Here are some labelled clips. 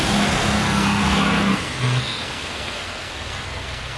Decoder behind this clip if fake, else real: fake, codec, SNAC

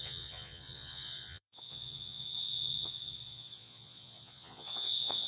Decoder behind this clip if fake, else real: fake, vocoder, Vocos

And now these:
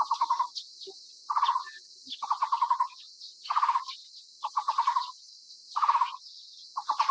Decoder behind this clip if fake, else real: real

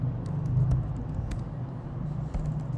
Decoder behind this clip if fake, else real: real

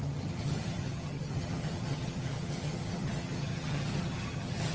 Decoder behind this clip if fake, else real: fake, vocoder, HiFi-GAN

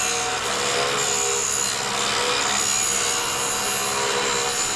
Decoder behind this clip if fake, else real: real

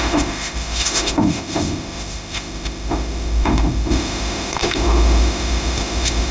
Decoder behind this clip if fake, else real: fake, autoencoder, DAC-VAE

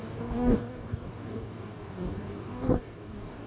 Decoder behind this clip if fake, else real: fake, codec, DAC